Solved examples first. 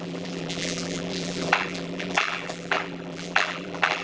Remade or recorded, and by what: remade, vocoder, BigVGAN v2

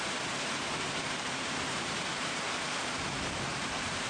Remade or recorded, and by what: remade, vocoder, BigVGAN v2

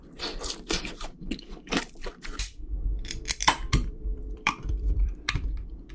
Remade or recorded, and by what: remade, vocoder, BigVGAN v2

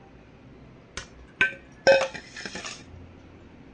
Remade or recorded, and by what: recorded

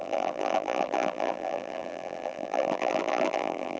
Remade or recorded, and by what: remade, vocoder, BigVGAN v2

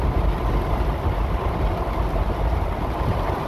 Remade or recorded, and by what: recorded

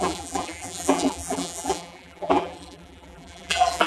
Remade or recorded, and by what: remade, vocoder, BigVGAN v2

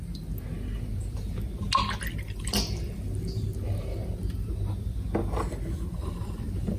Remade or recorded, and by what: recorded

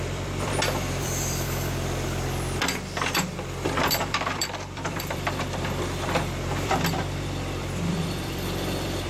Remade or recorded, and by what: remade, vocoder, BigVGAN v2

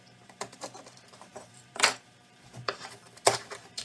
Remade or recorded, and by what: remade, vocoder, BigVGAN v2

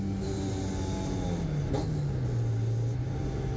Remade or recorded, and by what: recorded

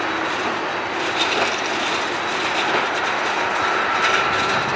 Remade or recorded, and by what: remade, vocoder, BigVGAN v2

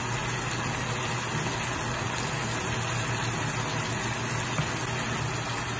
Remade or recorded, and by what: recorded